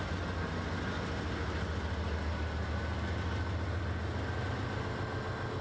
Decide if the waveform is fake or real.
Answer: real